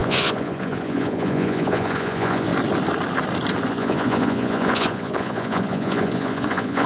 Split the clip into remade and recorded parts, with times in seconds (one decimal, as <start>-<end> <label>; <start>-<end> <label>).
0.0-2.5 remade; 2.5-3.7 recorded; 3.7-6.9 remade